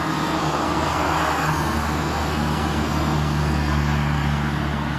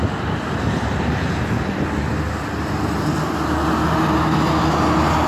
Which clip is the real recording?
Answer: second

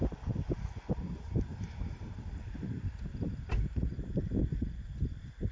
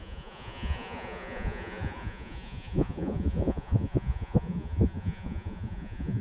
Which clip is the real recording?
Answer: first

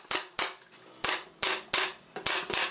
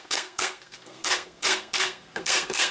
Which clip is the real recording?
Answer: first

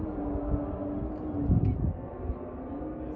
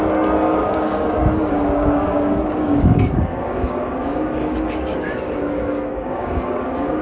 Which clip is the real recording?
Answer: first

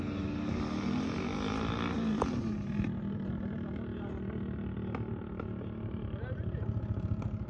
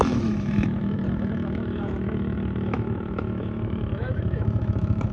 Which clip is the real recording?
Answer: first